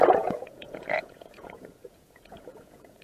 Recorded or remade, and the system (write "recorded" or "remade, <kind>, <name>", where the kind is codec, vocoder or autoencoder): remade, vocoder, Vocos